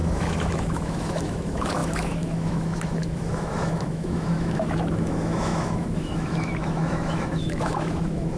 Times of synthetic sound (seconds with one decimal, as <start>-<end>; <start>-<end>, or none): 0.0-8.4